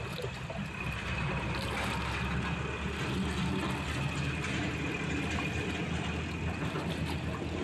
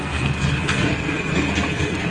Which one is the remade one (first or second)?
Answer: second